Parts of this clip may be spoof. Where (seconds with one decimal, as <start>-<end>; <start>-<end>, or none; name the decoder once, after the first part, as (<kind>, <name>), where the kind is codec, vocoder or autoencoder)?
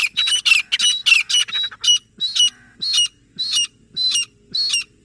none